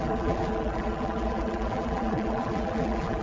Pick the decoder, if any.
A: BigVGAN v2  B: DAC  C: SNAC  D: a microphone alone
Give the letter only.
A